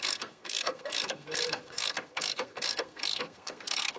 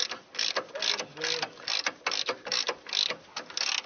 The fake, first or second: first